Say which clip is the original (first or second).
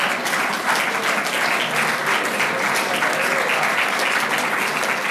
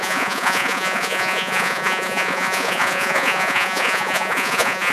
first